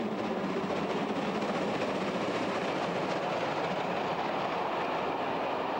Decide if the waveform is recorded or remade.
recorded